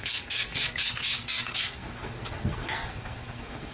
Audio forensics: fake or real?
fake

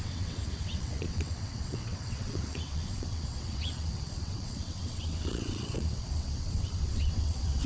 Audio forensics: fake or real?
fake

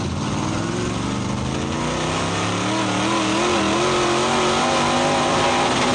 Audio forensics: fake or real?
real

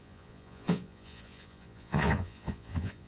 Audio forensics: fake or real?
fake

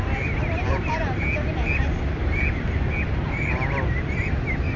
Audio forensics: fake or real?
real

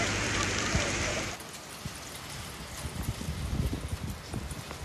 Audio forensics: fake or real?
fake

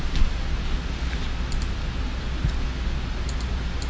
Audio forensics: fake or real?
real